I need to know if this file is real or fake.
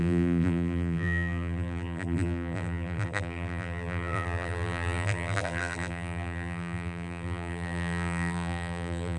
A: fake